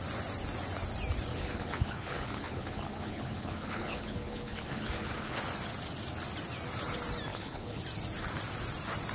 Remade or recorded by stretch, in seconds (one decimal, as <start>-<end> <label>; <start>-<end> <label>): 0.0-1.3 recorded; 1.3-5.4 remade; 5.4-7.3 recorded; 7.3-7.8 remade; 7.8-9.1 recorded